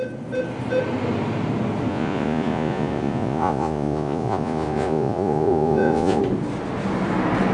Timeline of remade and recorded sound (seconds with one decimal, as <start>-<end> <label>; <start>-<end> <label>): 0.0-1.9 recorded; 1.9-6.2 remade; 6.2-7.5 recorded